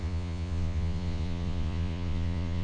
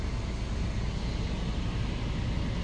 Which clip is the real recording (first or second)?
second